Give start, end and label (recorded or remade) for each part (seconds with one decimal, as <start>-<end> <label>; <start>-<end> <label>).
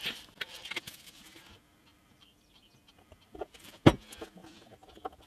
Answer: 0.0-0.7 remade; 0.7-1.9 recorded; 1.9-3.7 remade; 3.7-5.3 recorded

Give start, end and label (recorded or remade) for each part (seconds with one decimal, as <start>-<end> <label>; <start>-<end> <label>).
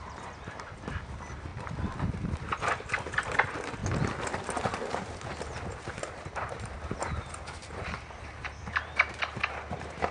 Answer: 0.0-1.5 remade; 1.5-2.0 recorded; 2.0-3.8 remade; 3.8-5.7 recorded; 5.7-10.1 remade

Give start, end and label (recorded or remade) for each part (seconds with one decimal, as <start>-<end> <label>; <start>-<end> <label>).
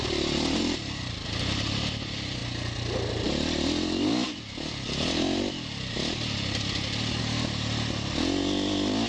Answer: 0.0-9.1 recorded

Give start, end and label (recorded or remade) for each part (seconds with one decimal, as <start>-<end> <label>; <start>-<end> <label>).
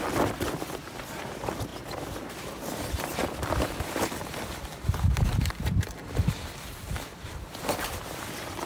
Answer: 0.0-1.2 recorded; 1.2-1.7 remade; 1.7-2.3 recorded; 2.3-8.7 remade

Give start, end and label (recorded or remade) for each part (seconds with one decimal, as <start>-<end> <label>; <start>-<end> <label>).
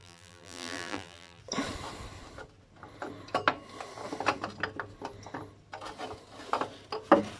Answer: 0.0-1.4 remade; 1.4-7.4 recorded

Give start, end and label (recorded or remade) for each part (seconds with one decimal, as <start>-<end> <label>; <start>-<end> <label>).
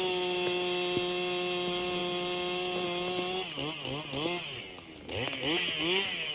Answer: 0.0-6.3 recorded